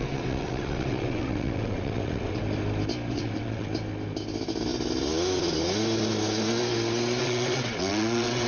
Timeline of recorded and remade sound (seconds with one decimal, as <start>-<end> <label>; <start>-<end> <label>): 0.0-2.4 remade; 2.4-3.1 recorded; 3.1-3.7 remade; 3.7-7.2 recorded; 7.2-8.5 remade